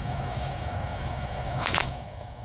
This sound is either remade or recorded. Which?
remade